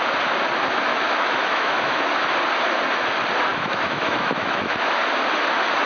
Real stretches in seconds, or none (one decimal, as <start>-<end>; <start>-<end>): 0.0-0.9; 2.1-3.5; 5.0-5.9